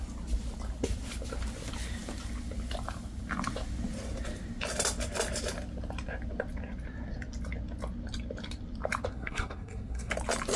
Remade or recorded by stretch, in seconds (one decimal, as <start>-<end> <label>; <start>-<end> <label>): 0.0-9.1 recorded; 9.1-10.1 remade; 10.1-10.6 recorded